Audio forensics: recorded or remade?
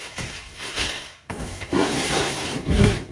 remade